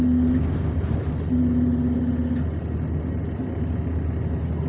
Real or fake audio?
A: real